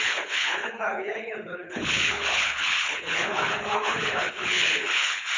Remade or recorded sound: remade